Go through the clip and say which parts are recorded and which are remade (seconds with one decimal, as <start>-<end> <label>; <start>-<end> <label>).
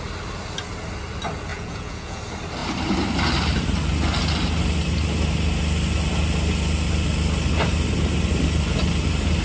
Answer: 0.0-1.5 recorded; 1.5-2.2 remade; 2.2-9.4 recorded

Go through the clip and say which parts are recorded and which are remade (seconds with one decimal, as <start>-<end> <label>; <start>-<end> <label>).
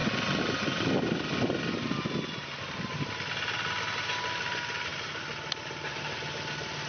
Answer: 0.0-6.9 recorded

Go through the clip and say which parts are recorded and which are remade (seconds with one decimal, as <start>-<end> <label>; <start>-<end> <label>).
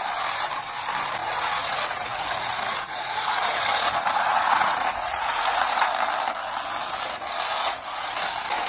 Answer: 0.0-1.2 recorded; 1.2-5.9 remade; 5.9-7.5 recorded; 7.5-8.1 remade; 8.1-8.7 recorded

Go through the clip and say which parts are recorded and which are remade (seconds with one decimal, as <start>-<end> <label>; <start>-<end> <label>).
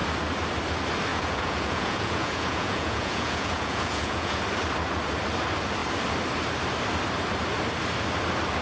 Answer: 0.0-1.1 recorded; 1.1-4.4 remade; 4.4-8.6 recorded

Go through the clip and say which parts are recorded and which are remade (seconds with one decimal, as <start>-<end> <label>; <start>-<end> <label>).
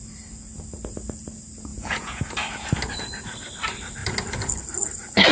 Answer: 0.0-1.7 recorded; 1.7-2.2 remade; 2.2-5.3 recorded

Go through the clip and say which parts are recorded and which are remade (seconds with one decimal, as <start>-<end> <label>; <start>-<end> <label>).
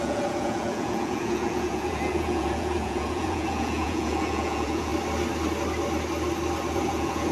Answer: 0.0-4.9 remade; 4.9-6.7 recorded; 6.7-7.3 remade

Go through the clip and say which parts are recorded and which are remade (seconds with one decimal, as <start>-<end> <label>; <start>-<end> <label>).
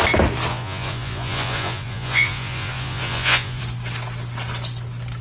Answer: 0.0-0.5 recorded; 0.5-3.6 remade; 3.6-5.2 recorded